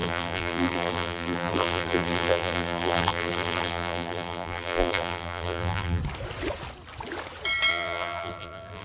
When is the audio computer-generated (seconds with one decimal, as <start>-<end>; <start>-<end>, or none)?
0.0-6.0; 7.7-8.8